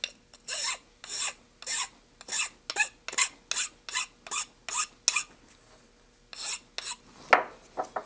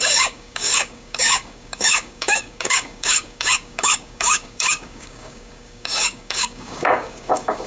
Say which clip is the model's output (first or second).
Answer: second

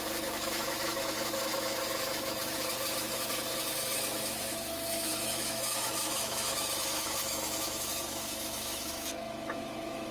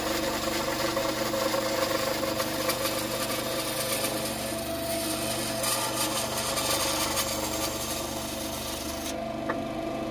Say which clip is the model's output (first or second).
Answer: first